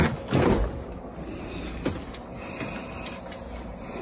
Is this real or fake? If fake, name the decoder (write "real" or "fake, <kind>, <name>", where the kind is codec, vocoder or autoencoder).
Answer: real